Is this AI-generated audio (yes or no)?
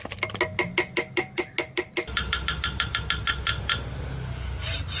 no